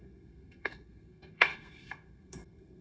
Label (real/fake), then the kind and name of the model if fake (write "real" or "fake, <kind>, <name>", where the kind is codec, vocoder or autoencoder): fake, codec, SNAC